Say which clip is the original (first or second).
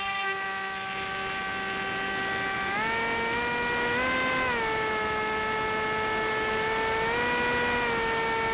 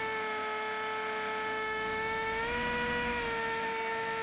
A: first